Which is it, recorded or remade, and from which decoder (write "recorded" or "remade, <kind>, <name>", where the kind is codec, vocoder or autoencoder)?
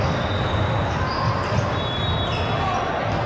recorded